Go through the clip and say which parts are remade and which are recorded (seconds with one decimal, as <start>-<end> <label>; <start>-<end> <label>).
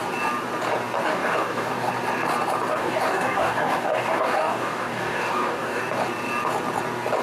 0.0-1.1 recorded; 1.1-1.9 remade; 1.9-2.7 recorded; 2.7-5.8 remade; 5.8-7.2 recorded